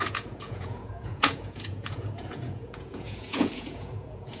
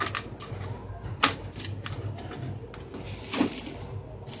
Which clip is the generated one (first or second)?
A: first